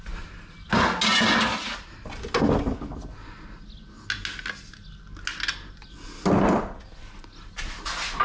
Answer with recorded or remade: recorded